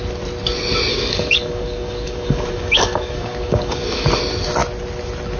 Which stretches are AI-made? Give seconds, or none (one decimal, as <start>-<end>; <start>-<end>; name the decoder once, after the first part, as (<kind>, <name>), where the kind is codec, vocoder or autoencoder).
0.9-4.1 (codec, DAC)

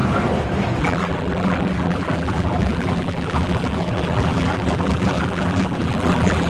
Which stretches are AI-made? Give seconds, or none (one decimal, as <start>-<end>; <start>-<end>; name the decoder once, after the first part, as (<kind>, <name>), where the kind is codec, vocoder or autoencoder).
0.8-6.5 (vocoder, BigVGAN v2)

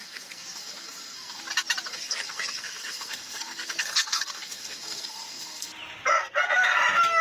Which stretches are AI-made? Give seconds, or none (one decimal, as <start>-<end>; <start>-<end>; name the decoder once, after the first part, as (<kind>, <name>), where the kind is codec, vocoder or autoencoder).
0.0-1.4 (codec, SNAC); 1.9-5.7; 6.2-6.8